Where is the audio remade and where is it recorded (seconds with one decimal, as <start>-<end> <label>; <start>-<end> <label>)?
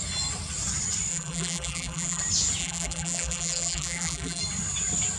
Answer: 0.0-1.1 recorded; 1.1-2.2 remade; 2.2-2.6 recorded; 2.6-4.4 remade; 4.4-5.2 recorded